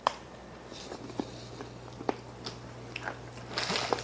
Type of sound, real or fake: real